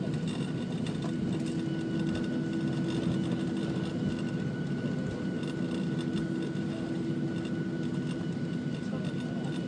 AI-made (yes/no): no